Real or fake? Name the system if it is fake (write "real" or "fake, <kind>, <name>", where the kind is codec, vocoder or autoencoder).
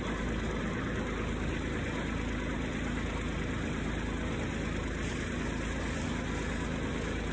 real